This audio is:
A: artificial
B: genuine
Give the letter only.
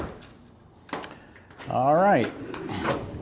B